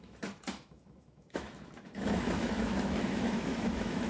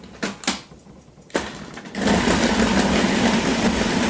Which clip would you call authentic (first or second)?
second